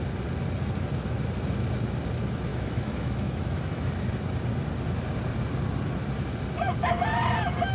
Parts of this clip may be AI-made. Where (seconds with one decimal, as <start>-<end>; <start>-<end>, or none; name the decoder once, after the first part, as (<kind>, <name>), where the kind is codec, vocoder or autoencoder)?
2.5-3.9 (autoencoder, DAC-VAE)